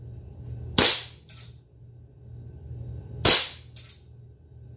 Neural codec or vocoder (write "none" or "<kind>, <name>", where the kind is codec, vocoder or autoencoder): none